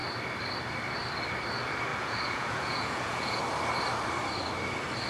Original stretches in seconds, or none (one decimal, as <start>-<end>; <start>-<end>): 0.0-1.9; 3.4-5.1